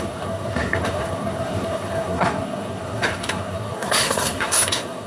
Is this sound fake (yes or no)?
yes